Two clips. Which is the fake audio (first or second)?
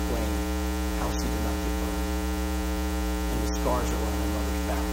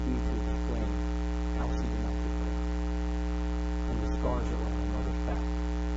first